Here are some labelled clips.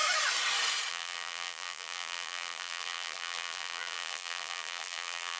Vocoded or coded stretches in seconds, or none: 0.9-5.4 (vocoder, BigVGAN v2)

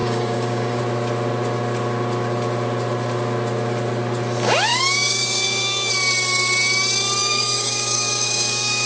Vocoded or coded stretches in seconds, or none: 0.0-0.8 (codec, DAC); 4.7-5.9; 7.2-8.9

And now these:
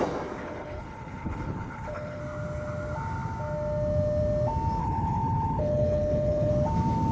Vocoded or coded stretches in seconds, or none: 0.4-2.2 (codec, HILCodec); 4.8-6.5

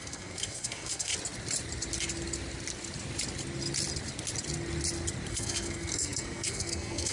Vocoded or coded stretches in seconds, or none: 0.0-1.1 (codec, SNAC); 5.3-7.1